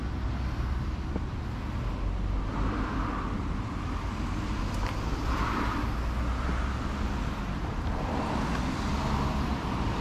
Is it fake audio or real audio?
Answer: real